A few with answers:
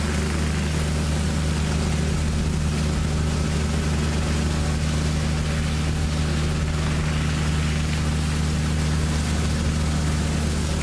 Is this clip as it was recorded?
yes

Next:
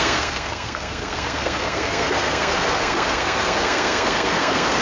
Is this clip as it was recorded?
no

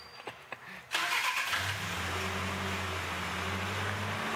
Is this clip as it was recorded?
yes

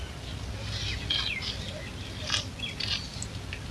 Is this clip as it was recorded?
yes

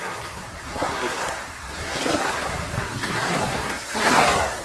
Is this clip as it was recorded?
no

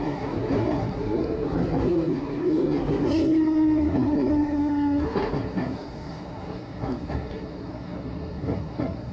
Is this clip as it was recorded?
no